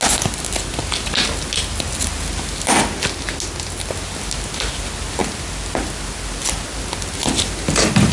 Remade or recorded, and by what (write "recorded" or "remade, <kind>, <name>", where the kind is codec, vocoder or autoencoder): recorded